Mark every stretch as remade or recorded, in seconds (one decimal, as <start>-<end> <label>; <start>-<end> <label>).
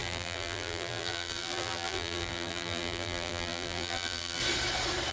0.0-4.4 remade; 4.4-5.1 recorded